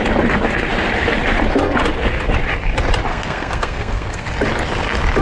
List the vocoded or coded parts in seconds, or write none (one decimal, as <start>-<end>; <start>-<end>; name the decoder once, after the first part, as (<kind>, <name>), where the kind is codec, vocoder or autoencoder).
3.1-4.3 (codec, SNAC)